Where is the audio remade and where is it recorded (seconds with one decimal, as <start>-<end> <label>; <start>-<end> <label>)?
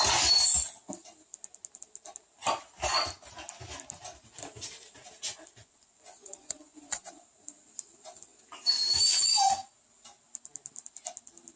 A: 0.0-5.6 recorded; 5.6-7.1 remade; 7.1-11.6 recorded